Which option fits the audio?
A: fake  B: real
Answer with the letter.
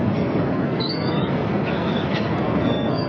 A